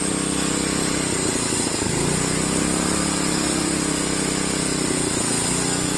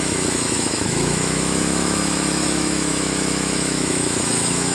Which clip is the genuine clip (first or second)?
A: first